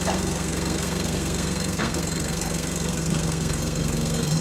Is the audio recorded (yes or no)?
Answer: no